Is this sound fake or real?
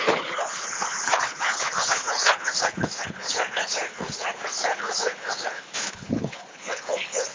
fake